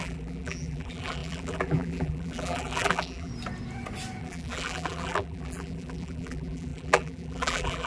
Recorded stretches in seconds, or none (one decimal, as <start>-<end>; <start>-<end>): 3.3-4.2